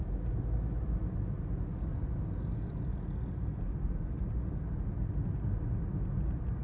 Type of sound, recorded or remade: recorded